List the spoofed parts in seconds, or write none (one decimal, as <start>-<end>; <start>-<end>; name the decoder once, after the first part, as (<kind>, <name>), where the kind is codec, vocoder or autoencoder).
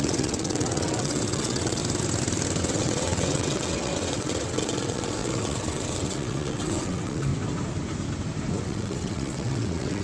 0.0-1.8 (vocoder, WaveNeXt); 2.6-7.3; 8.6-10.0